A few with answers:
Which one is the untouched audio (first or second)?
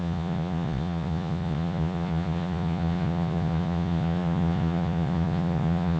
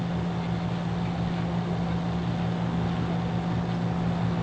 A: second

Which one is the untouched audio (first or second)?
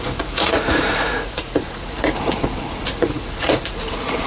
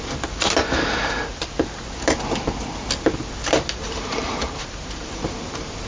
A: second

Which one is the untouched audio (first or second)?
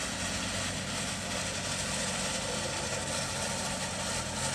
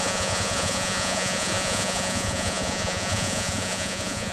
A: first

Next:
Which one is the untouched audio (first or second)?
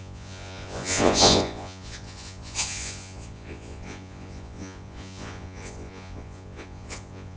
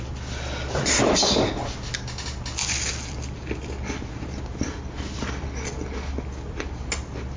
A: second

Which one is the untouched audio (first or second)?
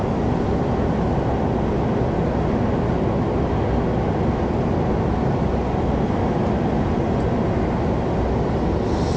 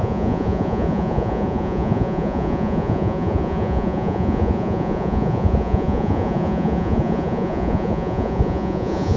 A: first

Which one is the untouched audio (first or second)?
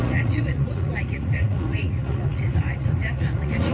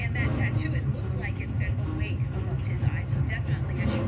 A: second